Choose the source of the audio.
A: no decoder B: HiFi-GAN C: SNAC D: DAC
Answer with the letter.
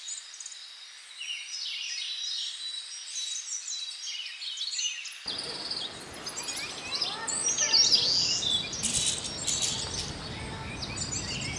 A